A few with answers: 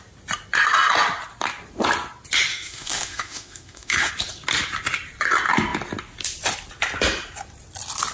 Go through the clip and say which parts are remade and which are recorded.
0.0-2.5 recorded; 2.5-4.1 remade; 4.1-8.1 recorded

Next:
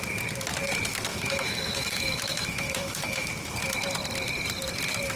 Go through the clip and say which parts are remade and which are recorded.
0.0-1.1 recorded; 1.1-3.3 remade; 3.3-5.2 recorded

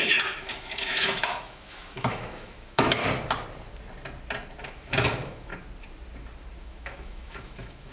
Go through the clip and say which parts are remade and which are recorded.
0.0-3.0 remade; 3.0-4.6 recorded; 4.6-5.5 remade; 5.5-6.6 recorded; 6.6-7.9 remade

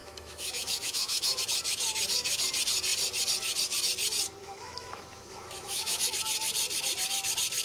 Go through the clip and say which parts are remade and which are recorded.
0.0-1.4 remade; 1.4-4.4 recorded; 4.4-6.0 remade; 6.0-7.6 recorded